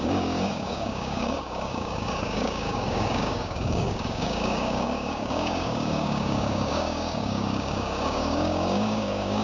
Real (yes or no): no